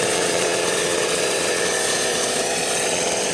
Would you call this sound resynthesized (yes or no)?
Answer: yes